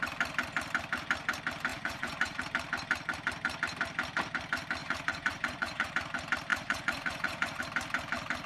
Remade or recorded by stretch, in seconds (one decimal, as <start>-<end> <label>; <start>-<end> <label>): 0.0-1.7 recorded; 1.7-2.4 remade; 2.4-4.8 recorded; 4.8-5.9 remade; 5.9-6.5 recorded; 6.5-7.6 remade; 7.6-8.5 recorded